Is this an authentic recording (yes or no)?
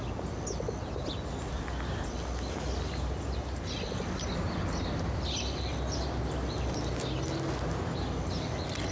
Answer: yes